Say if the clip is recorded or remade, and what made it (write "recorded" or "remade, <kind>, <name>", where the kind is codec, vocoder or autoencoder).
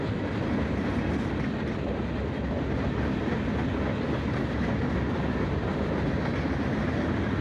recorded